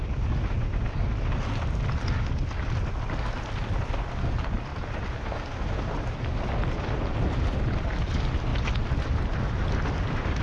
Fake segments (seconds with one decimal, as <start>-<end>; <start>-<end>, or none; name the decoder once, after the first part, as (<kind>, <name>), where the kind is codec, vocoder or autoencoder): none

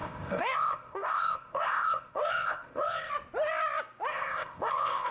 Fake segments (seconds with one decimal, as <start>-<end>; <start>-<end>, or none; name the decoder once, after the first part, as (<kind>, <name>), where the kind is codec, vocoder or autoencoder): 0.0-3.1 (codec, ZipCodec); 4.1-5.1

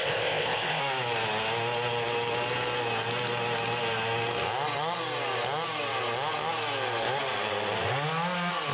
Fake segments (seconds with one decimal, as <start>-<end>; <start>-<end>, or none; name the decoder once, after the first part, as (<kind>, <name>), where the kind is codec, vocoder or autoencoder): 0.0-0.8 (codec, ZipCodec)

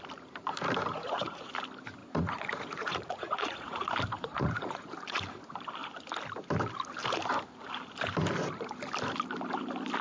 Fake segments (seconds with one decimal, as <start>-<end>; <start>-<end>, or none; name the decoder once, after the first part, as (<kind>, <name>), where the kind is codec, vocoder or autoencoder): 0.9-1.5 (vocoder, Vocos); 2.0-3.9; 4.3-5.2

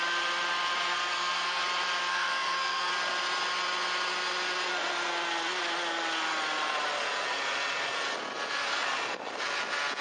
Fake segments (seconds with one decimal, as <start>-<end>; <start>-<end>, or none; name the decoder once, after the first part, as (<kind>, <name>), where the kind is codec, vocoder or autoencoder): 0.9-1.6 (codec, SNAC); 2.1-2.9

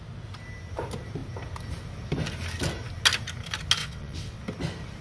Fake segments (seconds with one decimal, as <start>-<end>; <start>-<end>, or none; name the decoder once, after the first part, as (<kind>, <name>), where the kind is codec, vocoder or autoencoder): 3.8-4.4 (vocoder, WaveNeXt)

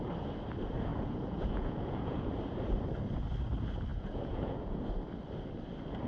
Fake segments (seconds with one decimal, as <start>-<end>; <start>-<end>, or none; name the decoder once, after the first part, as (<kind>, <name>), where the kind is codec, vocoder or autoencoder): 0.9-2.3 (vocoder, Vocos); 3.9-4.8